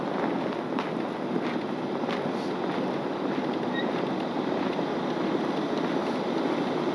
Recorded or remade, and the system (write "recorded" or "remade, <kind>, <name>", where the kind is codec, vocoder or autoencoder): recorded